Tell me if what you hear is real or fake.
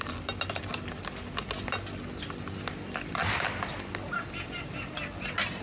real